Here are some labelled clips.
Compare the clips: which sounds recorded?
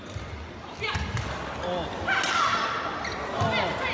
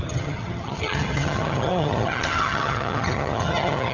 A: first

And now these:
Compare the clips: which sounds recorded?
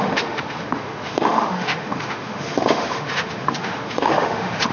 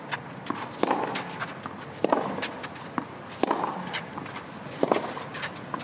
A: second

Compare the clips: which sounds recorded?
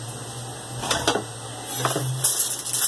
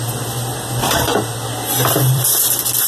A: first